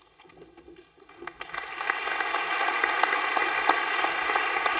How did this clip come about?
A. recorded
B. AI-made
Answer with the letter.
A